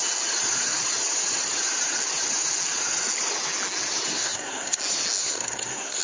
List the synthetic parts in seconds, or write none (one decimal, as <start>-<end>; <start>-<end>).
4.1-4.8; 5.2-6.0